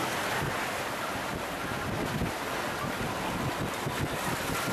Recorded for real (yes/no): yes